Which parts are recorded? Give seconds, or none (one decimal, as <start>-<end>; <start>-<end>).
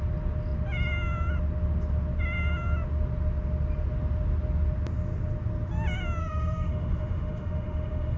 0.0-6.2